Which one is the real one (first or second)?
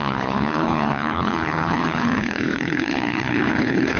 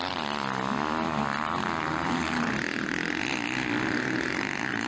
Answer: second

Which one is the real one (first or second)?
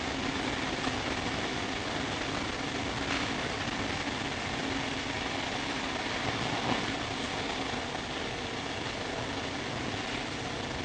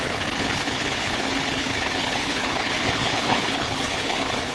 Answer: first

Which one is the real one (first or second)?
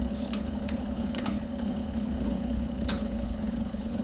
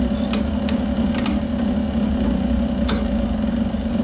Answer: second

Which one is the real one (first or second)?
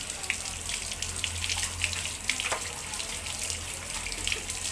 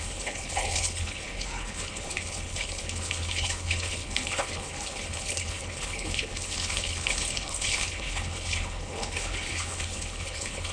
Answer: first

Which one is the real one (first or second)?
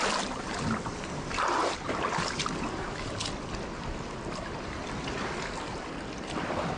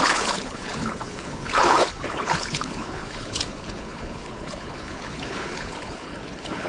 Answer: first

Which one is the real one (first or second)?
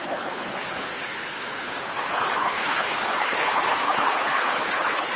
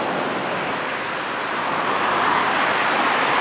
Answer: second